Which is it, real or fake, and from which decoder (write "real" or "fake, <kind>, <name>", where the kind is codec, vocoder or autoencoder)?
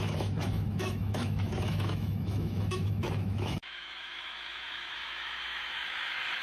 fake, autoencoder, DAC-VAE